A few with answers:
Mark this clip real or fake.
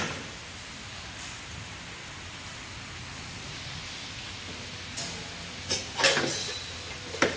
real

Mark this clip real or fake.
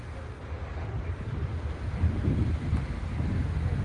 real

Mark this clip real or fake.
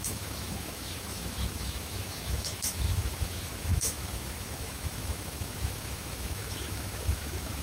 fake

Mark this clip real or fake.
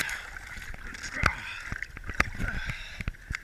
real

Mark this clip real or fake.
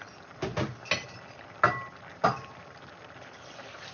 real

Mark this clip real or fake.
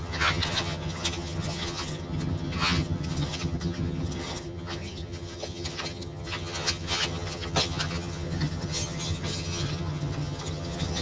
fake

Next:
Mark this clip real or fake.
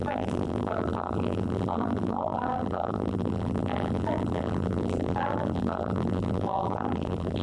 fake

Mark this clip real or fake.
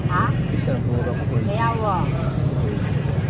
real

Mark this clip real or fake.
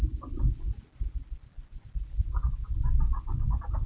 real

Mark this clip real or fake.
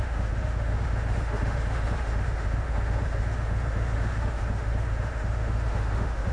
fake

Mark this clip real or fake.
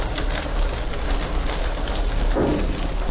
real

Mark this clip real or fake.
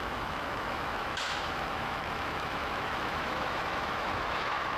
fake